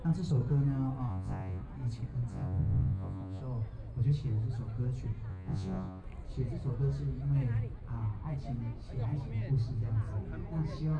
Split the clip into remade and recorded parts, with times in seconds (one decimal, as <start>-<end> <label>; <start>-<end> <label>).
0.0-1.1 recorded; 1.1-1.6 remade; 1.6-2.3 recorded; 2.3-3.4 remade; 3.4-5.3 recorded; 5.3-6.0 remade; 6.0-11.0 recorded